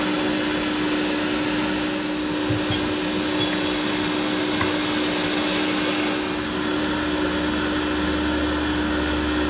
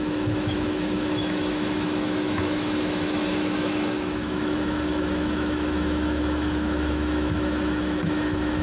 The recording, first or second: first